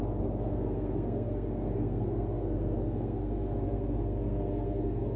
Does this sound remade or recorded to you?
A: remade